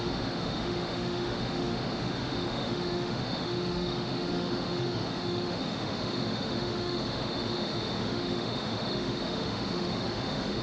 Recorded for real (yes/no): no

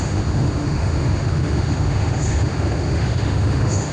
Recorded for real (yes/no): no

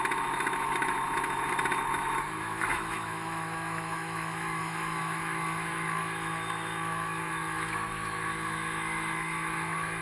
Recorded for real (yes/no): no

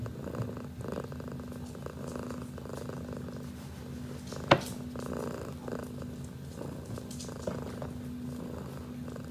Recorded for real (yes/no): yes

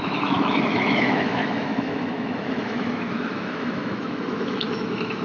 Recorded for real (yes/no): no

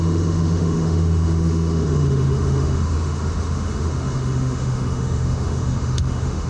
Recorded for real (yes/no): no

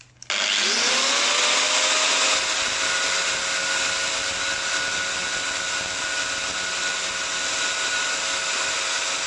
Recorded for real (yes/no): yes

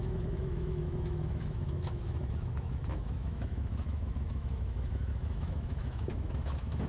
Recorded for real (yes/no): no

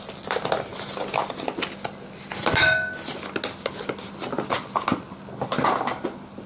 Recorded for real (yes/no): yes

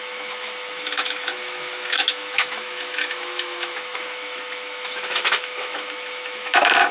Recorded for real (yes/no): no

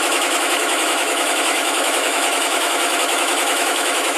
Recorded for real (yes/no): no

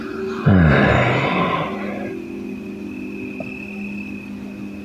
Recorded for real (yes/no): yes